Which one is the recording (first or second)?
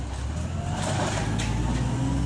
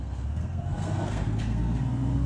first